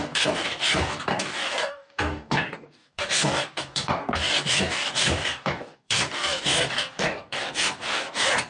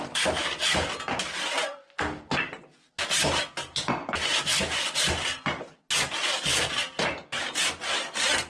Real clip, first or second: second